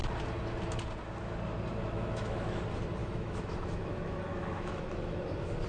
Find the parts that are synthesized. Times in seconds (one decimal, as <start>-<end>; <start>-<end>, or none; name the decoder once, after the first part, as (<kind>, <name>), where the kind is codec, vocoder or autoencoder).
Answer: 1.7-2.6 (autoencoder, DAC-VAE); 3.0-5.2